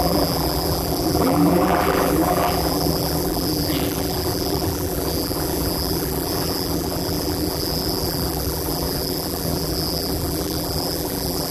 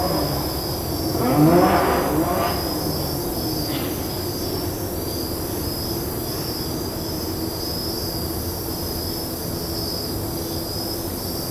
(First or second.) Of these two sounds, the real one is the second